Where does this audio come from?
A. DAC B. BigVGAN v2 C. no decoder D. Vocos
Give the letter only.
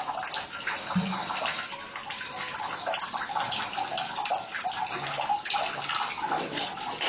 C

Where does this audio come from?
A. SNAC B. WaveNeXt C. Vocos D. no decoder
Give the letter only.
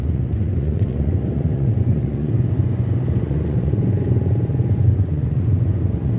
C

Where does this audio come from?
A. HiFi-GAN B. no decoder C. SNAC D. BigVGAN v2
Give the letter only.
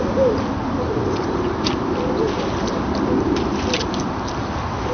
B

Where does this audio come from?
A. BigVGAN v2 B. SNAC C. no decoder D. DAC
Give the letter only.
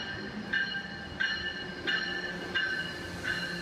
C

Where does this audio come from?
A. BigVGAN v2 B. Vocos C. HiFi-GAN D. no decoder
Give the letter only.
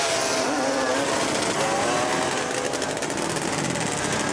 D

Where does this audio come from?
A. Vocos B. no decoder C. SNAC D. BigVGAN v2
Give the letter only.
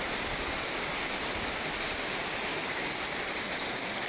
B